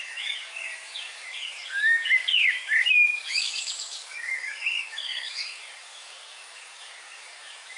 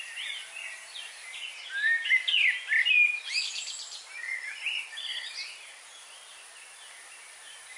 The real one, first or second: second